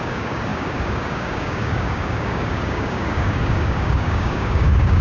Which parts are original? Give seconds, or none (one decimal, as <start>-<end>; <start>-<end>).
none